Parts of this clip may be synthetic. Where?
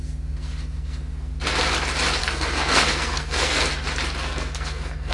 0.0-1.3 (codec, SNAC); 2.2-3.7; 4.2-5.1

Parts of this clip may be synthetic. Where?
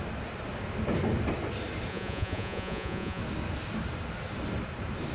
1.9-3.2 (vocoder, Vocos)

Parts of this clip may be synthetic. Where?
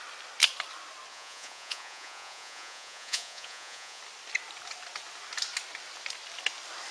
1.1-4.0 (vocoder, Vocos)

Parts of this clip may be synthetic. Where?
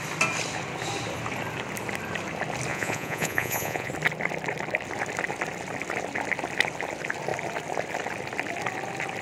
2.7-3.9 (vocoder, Vocos)